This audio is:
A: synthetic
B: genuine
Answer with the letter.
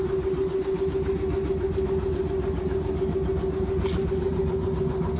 B